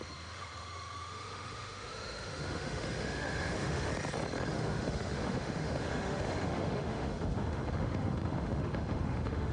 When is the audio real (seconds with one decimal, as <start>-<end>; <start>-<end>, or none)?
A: 3.9-4.5